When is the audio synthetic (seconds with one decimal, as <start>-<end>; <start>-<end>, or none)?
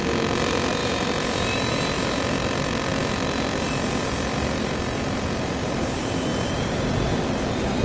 none